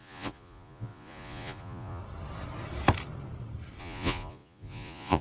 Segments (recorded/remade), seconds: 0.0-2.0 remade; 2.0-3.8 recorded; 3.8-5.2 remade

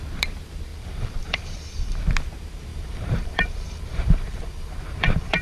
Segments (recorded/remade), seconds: 0.0-0.7 recorded; 0.7-2.0 remade; 2.0-2.7 recorded; 2.7-5.4 remade

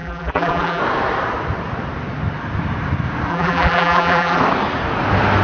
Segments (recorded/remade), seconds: 0.0-0.8 remade; 0.8-3.3 recorded; 3.3-4.4 remade; 4.4-5.4 recorded

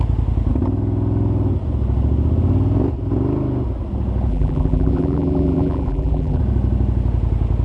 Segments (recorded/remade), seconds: 0.0-4.3 recorded; 4.3-6.4 remade; 6.4-7.6 recorded